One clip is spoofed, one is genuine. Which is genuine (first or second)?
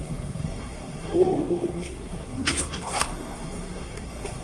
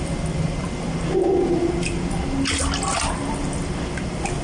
second